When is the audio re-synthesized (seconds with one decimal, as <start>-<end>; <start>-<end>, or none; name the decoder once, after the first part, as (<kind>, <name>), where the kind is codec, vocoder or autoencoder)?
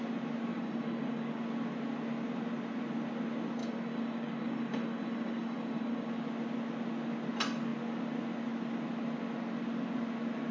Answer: 0.5-1.4 (codec, DAC); 3.6-6.1